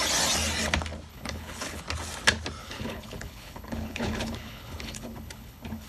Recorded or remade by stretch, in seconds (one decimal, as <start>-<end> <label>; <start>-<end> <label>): 0.0-1.1 recorded; 1.1-1.8 remade; 1.8-2.6 recorded; 2.6-5.9 remade